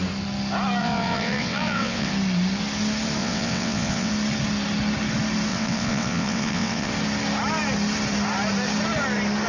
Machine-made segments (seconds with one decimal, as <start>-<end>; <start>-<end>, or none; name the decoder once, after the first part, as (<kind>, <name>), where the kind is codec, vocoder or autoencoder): 0.8-2.1 (vocoder, WaveNeXt); 3.2-4.1; 5.5-6.9